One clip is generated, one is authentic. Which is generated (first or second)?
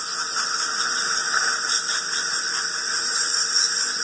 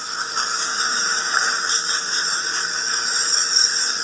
second